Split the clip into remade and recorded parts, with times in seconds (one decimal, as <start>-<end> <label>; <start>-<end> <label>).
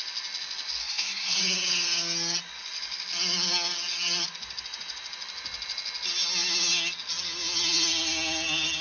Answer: 0.0-0.8 recorded; 0.8-1.4 remade; 1.4-8.8 recorded